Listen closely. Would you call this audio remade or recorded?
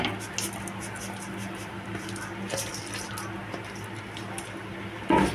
recorded